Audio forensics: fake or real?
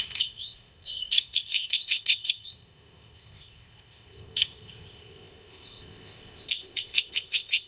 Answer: fake